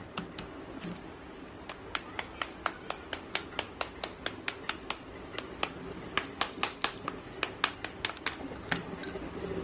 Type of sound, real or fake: real